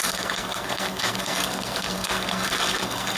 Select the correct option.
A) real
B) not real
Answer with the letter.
B